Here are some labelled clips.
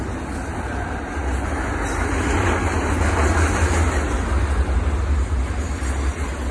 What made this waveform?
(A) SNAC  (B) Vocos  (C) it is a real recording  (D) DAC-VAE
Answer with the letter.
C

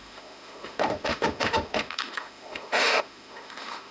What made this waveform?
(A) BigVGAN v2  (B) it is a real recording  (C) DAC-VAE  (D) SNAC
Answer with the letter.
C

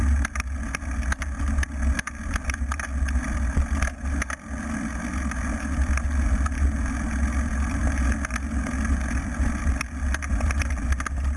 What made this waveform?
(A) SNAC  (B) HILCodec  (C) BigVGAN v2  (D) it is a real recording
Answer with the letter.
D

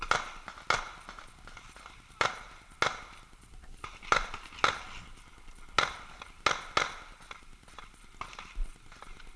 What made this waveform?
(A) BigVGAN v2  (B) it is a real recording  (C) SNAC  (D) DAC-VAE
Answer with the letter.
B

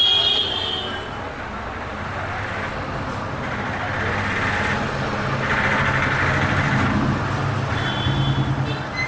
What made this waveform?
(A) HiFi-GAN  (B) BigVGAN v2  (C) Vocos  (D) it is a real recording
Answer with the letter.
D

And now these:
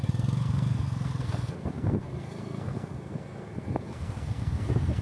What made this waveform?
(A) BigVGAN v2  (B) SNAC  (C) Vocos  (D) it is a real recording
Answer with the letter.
B